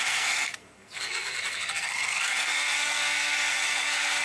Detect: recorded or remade remade